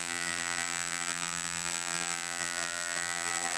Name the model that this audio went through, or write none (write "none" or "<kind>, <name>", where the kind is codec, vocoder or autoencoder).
vocoder, BigVGAN v2